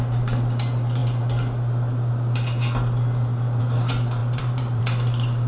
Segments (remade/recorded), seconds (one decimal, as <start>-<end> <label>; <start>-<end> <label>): 0.0-4.2 recorded; 4.2-4.8 remade; 4.8-5.5 recorded

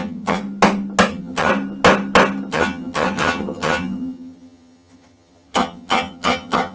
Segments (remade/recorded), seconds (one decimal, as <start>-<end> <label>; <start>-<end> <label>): 0.0-0.4 remade; 0.4-1.1 recorded; 1.1-1.5 remade; 1.5-2.5 recorded; 2.5-6.7 remade

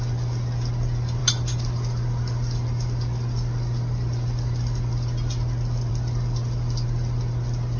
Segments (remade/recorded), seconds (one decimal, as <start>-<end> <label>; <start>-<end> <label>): 0.0-7.8 recorded

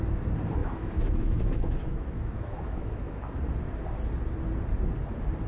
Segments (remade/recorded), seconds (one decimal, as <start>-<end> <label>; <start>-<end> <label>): 0.0-0.6 recorded; 0.6-3.4 remade; 3.4-5.5 recorded

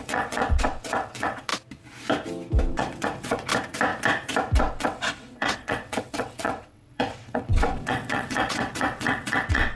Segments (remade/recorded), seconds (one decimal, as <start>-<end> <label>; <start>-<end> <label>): 0.0-1.5 remade; 1.5-2.7 recorded; 2.7-3.5 remade; 3.5-4.6 recorded; 4.6-9.8 remade

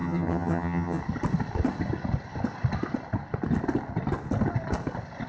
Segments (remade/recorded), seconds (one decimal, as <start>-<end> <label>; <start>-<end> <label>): 0.0-1.0 remade; 1.0-5.3 recorded